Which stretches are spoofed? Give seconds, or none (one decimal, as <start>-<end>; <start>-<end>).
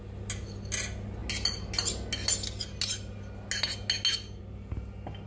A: none